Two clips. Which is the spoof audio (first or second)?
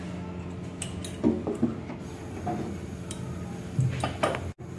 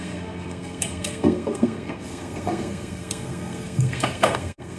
second